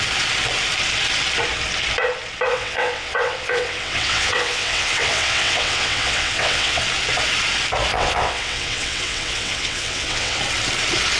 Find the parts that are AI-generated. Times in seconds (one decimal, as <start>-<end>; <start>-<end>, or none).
2.5-6.8; 7.9-10.4